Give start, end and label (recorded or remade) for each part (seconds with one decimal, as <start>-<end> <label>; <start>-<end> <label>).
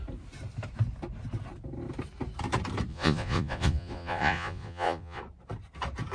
0.0-2.9 recorded; 2.9-5.2 remade; 5.2-6.1 recorded